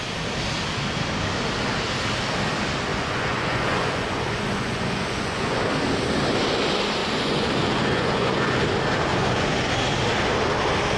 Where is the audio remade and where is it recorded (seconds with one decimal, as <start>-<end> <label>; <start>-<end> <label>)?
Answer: 0.0-2.9 recorded; 2.9-5.6 remade; 5.6-7.0 recorded; 7.0-8.6 remade; 8.6-9.1 recorded; 9.1-9.7 remade; 9.7-11.0 recorded